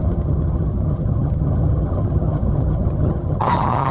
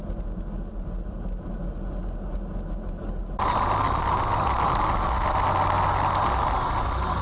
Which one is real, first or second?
second